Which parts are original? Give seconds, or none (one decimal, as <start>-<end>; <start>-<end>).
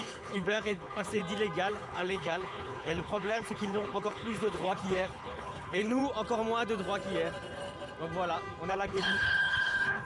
1.2-1.7; 6.0-8.7